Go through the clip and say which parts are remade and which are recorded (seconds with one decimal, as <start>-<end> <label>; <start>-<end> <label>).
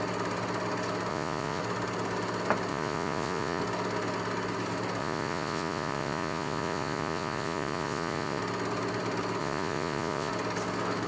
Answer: 0.0-1.1 recorded; 1.1-1.6 remade; 1.6-2.7 recorded; 2.7-3.6 remade; 3.6-5.0 recorded; 5.0-8.4 remade; 8.4-9.4 recorded; 9.4-10.3 remade; 10.3-11.1 recorded